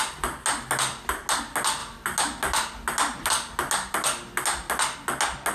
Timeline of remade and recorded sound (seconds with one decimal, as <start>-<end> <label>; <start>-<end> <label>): 0.0-5.5 recorded